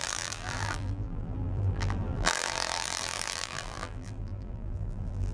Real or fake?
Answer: fake